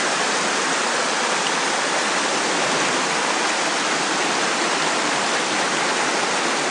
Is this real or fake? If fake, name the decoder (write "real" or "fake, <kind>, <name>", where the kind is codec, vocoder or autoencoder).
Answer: real